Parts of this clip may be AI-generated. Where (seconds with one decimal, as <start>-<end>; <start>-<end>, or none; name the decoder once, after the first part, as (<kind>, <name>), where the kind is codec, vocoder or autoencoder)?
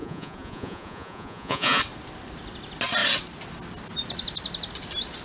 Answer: 0.0-1.8 (vocoder, Vocos)